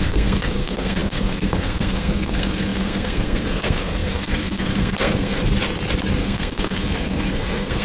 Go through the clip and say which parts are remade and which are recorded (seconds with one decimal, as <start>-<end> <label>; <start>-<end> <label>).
0.0-5.4 remade; 5.4-6.2 recorded; 6.2-7.8 remade